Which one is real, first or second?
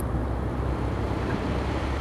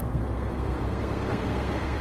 first